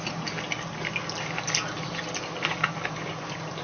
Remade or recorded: recorded